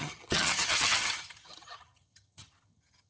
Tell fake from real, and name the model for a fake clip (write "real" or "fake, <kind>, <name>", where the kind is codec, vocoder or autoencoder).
fake, vocoder, HiFi-GAN